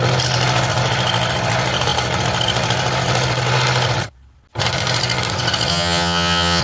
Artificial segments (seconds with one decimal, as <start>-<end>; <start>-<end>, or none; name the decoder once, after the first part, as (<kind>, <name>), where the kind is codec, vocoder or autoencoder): 5.7-6.6 (vocoder, HiFi-GAN)